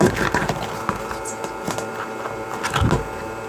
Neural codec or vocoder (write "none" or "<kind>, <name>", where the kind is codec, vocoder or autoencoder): none